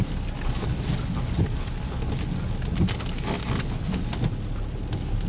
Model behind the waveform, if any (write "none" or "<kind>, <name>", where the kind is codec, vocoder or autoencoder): none